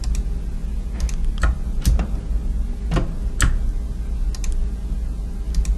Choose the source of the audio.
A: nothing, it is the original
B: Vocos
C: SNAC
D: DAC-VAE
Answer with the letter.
A